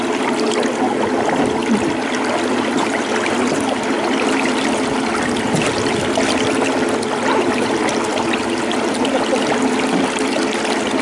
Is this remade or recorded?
recorded